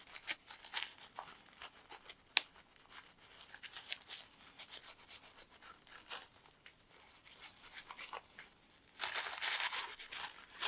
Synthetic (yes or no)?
no